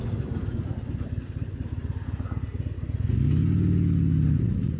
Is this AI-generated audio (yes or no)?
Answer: no